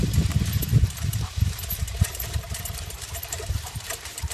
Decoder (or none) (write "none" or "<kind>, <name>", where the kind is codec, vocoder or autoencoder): vocoder, BigVGAN v2